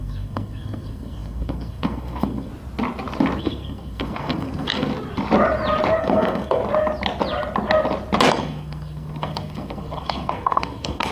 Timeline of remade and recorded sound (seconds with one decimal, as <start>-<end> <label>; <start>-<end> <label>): 0.0-2.5 remade; 2.5-3.4 recorded; 3.4-4.9 remade; 4.9-6.0 recorded; 6.0-6.6 remade; 6.6-8.3 recorded; 8.3-11.1 remade